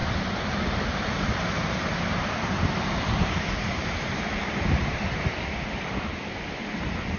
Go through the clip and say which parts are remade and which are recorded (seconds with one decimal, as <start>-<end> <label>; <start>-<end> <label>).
0.0-7.2 remade